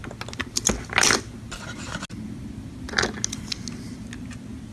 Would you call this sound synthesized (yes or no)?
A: no